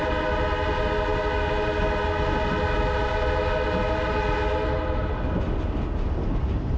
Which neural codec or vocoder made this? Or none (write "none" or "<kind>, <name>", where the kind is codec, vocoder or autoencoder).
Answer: none